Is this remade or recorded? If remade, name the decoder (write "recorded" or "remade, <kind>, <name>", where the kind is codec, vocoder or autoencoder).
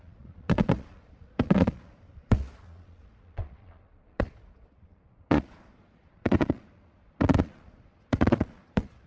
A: remade, vocoder, Vocos